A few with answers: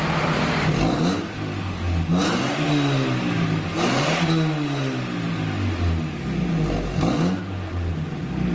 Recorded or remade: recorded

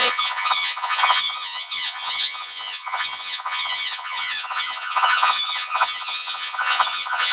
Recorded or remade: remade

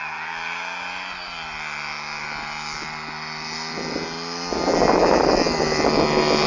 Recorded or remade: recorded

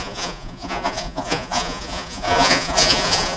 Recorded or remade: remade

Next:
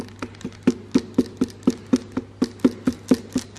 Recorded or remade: recorded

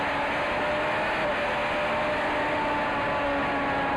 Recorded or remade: recorded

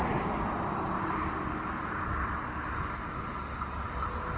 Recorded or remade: recorded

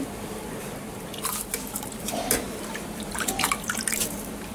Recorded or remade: remade